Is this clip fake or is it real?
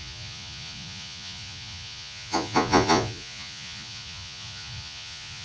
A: fake